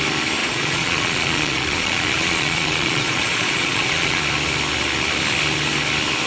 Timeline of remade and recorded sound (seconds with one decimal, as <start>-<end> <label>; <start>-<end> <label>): 0.0-0.4 recorded; 0.4-4.2 remade; 4.2-6.3 recorded